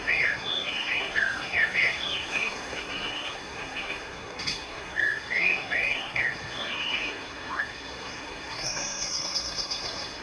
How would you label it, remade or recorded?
remade